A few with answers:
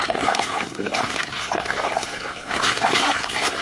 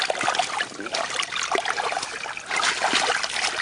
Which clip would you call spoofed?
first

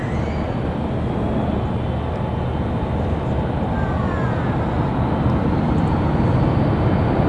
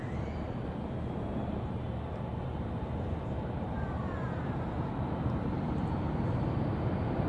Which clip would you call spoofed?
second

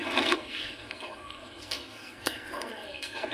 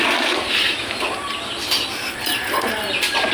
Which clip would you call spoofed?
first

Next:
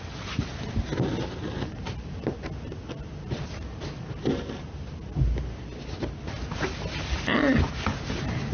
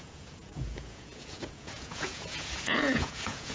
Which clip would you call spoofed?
second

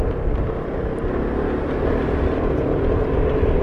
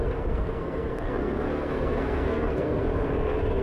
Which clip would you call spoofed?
second